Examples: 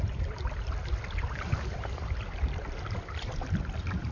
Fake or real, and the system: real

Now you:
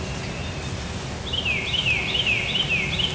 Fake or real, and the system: real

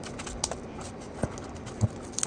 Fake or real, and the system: real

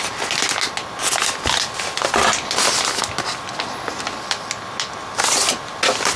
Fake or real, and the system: real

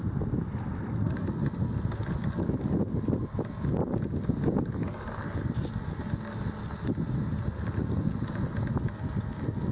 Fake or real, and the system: real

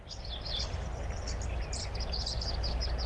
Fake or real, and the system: real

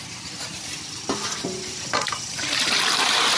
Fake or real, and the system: real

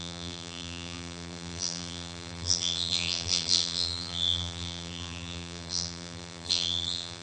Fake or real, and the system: fake, vocoder, BigVGAN v2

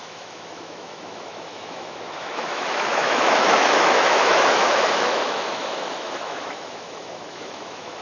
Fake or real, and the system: fake, autoencoder, DAC-VAE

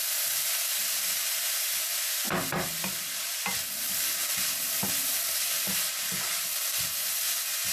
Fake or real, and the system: real